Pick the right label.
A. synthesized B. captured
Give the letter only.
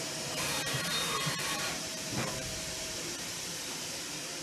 A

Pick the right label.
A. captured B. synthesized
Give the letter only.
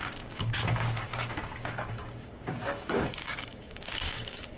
B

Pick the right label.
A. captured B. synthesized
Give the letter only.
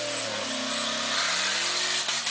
A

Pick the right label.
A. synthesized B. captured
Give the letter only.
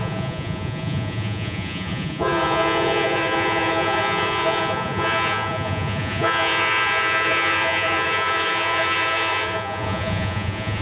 A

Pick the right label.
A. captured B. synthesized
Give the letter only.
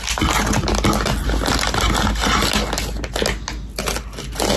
A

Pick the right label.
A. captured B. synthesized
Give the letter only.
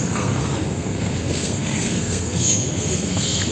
B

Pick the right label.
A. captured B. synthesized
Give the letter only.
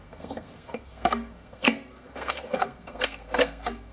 B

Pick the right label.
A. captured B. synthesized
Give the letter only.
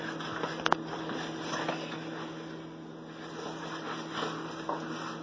A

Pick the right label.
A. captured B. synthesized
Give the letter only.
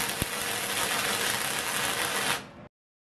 A